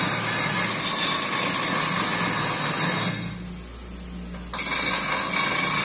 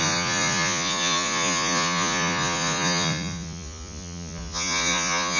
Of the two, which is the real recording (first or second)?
first